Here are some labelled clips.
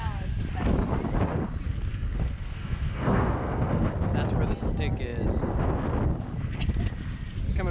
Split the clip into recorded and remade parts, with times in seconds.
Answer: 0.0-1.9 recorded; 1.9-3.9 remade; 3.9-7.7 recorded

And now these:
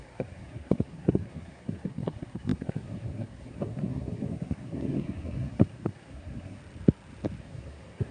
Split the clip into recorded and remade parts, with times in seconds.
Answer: 0.0-6.6 remade; 6.6-7.4 recorded; 7.4-8.1 remade